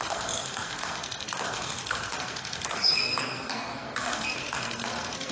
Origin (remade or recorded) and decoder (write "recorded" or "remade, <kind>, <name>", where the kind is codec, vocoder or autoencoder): remade, codec, SNAC